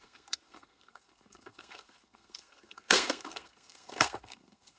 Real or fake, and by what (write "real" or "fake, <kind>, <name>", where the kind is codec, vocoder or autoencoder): fake, codec, SNAC